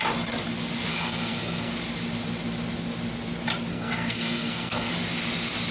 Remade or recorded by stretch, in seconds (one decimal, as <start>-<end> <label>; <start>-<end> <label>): 0.0-0.9 recorded; 0.9-1.7 remade; 1.7-3.7 recorded; 3.7-4.9 remade; 4.9-5.7 recorded